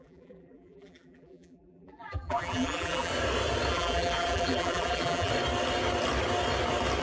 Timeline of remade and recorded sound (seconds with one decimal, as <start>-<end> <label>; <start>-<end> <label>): 0.0-3.1 remade; 3.1-3.7 recorded; 3.7-5.3 remade; 5.3-7.0 recorded